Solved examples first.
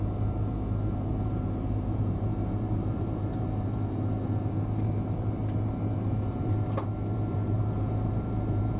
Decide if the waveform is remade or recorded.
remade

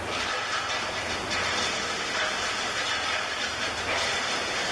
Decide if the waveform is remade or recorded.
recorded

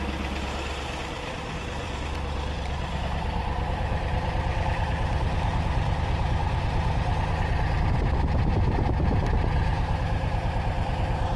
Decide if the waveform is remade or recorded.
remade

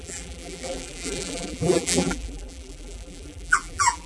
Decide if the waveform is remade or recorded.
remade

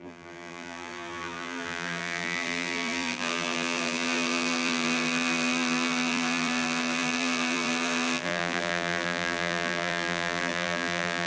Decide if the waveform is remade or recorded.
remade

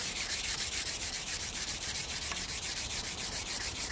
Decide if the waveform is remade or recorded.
remade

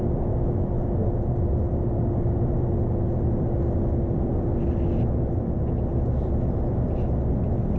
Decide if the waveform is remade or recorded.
recorded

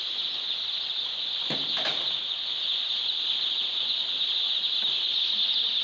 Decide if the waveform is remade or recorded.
recorded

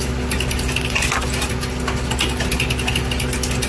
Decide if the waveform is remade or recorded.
recorded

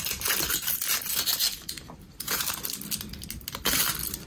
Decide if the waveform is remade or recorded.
recorded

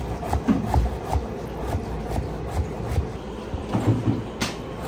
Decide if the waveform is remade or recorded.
recorded